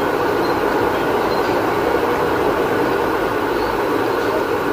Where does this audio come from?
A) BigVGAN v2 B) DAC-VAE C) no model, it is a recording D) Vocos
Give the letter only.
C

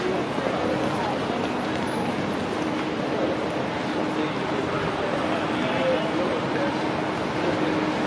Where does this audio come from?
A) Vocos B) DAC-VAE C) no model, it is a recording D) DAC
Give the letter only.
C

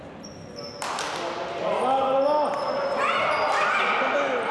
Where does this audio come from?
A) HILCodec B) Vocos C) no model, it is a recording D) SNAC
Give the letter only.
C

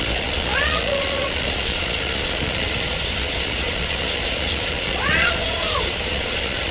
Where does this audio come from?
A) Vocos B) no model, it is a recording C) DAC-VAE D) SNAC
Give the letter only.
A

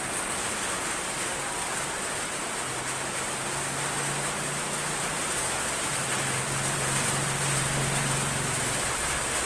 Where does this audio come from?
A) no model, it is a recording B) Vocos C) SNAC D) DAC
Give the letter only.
A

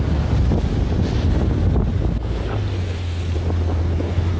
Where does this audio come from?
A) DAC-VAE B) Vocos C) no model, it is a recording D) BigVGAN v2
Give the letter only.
C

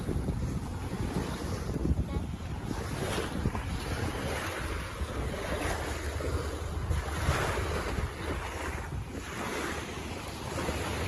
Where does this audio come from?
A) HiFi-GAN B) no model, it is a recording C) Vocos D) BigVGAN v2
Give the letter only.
B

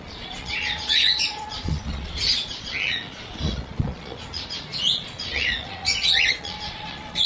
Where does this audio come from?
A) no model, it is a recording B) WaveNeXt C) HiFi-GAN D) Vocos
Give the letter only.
D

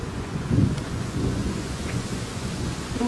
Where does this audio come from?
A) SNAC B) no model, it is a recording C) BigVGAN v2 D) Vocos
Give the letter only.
D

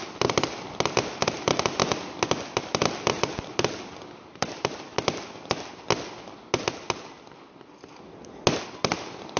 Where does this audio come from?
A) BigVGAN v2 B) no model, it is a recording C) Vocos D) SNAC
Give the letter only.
B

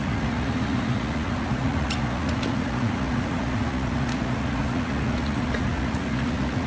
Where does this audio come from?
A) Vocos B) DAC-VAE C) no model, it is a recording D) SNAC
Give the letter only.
A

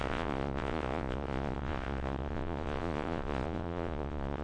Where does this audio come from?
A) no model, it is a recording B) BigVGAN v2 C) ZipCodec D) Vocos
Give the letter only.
D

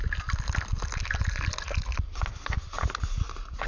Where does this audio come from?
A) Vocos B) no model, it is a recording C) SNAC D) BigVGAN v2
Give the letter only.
B